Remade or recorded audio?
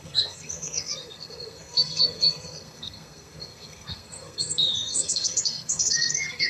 remade